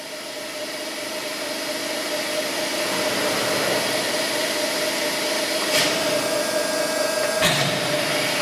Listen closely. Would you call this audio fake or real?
fake